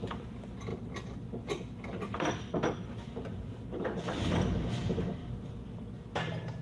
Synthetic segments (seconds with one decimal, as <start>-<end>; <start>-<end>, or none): none